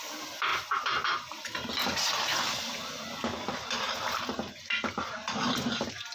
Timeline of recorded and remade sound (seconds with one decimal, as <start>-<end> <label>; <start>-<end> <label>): 0.0-6.1 recorded